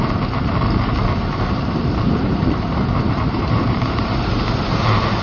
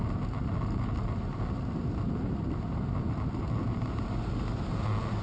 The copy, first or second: first